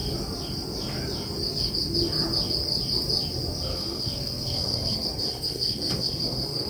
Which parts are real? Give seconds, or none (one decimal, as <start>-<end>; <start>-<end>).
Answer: 0.0-3.7